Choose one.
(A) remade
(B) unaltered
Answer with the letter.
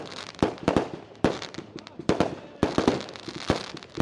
A